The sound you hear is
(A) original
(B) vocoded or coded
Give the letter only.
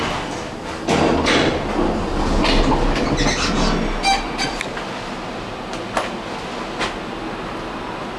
A